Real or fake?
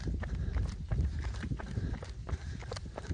fake